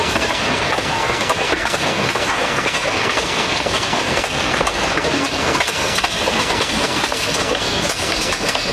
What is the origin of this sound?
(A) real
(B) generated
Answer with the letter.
B